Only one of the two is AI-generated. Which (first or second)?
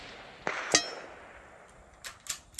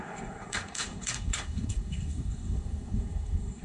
second